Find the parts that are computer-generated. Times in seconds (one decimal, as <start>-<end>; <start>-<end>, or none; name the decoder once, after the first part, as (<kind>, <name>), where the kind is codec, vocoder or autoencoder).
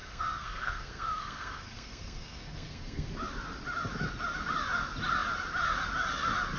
0.0-3.1 (codec, SNAC)